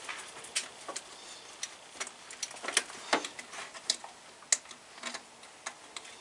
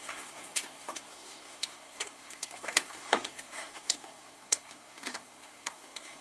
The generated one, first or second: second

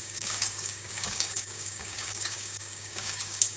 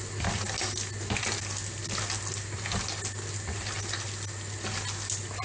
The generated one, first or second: first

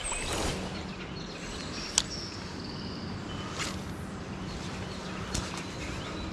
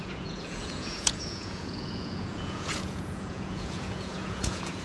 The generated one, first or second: second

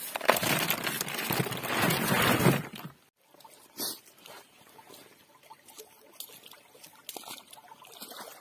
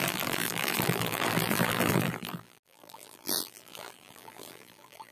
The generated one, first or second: second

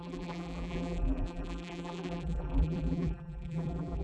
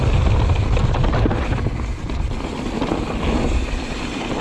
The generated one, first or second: first